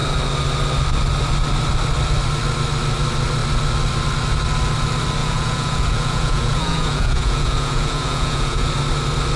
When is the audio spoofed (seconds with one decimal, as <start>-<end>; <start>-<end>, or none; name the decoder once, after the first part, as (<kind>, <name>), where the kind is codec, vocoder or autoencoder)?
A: 5.2-8.7 (vocoder, Vocos)

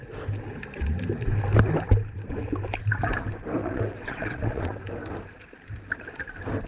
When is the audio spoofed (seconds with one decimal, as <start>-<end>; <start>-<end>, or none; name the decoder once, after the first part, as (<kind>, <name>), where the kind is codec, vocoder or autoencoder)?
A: 3.6-4.8 (vocoder, WaveNeXt)

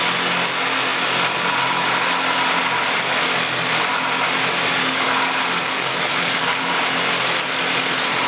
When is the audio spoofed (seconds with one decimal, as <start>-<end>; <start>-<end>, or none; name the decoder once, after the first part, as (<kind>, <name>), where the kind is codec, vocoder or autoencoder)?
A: 4.8-6.8 (codec, DAC)

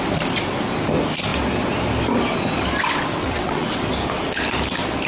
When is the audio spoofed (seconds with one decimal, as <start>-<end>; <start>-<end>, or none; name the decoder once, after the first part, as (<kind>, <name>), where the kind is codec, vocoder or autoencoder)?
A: 3.2-3.8 (vocoder, WaveNeXt)

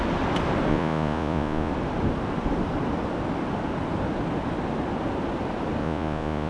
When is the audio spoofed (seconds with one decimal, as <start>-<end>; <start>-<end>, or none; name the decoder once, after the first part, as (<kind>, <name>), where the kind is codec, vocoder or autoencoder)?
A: 0.7-1.7 (vocoder, Vocos); 5.8-6.5